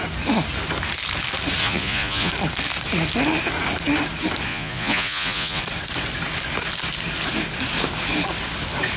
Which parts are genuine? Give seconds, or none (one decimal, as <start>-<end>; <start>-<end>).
0.0-1.6; 2.3-4.5; 5.6-9.0